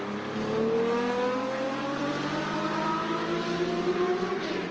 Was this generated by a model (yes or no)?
no